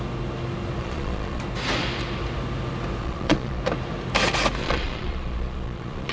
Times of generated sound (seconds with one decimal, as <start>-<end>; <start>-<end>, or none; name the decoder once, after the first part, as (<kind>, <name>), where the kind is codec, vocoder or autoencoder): 0.8-1.4 (vocoder, Vocos); 3.0-3.6; 4.6-6.1